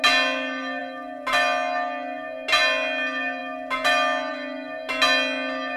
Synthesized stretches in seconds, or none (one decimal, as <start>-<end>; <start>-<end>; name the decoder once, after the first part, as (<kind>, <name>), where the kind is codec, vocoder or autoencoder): none